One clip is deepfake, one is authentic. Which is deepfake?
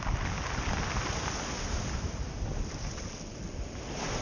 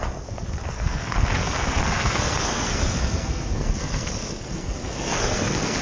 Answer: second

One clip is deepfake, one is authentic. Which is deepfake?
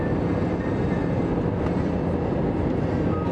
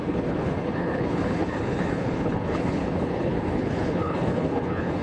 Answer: second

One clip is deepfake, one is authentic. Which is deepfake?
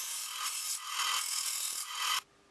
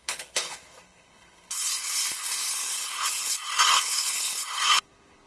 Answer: second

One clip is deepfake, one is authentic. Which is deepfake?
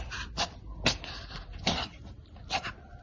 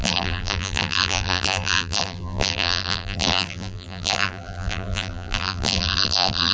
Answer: second